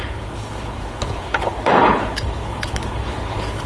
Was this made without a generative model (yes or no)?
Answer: no